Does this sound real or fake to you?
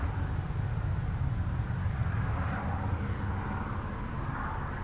real